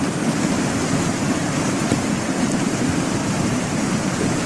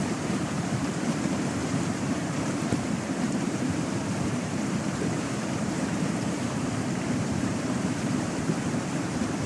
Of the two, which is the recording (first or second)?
first